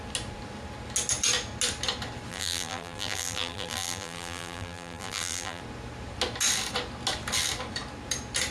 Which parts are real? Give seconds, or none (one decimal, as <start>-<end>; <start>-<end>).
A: 0.0-2.3; 5.6-8.5